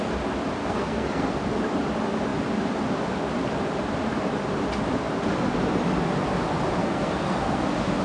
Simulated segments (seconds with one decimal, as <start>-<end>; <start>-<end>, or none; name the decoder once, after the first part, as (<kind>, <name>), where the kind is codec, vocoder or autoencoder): 0.6-1.4 (codec, SNAC); 6.8-7.6